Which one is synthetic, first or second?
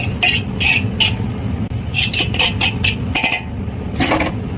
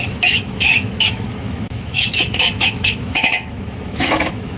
second